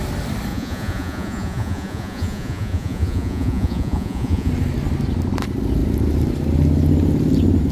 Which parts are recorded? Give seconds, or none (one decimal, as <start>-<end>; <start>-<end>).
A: 0.0-0.5; 4.5-7.7